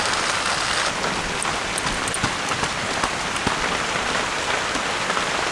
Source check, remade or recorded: recorded